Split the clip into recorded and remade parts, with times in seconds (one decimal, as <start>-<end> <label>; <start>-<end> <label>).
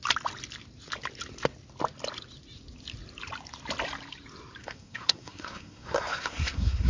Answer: 0.0-4.6 recorded; 4.6-6.9 remade